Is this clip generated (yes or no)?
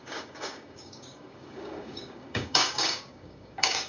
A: yes